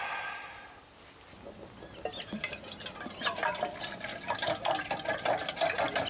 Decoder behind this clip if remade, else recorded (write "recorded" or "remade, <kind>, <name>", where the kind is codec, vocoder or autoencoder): recorded